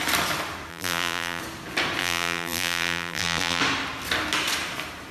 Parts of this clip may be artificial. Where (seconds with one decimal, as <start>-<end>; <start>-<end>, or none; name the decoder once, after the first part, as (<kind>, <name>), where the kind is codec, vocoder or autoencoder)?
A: 0.7-1.4 (vocoder, BigVGAN v2); 2.0-3.6